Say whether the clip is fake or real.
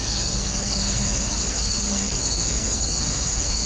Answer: fake